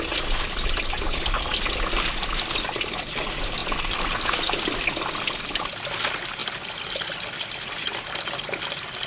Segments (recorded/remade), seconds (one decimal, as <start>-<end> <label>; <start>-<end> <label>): 0.0-6.4 recorded; 6.4-8.3 remade; 8.3-9.1 recorded